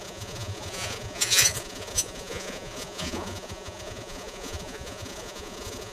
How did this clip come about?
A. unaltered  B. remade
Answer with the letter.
B